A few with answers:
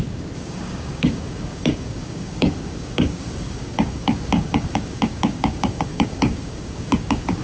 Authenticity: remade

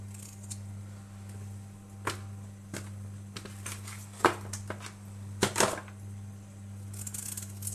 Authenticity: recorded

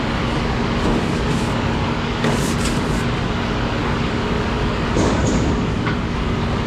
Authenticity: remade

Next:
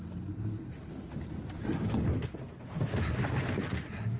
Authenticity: recorded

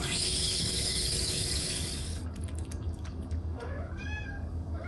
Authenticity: remade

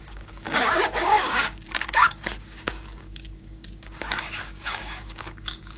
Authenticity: remade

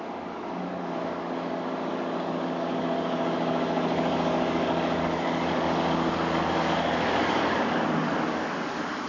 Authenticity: remade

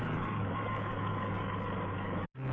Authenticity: remade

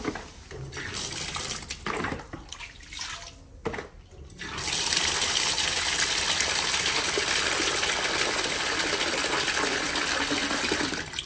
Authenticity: recorded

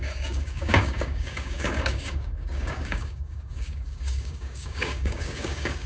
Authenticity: remade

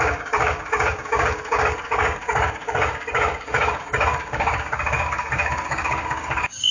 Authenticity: remade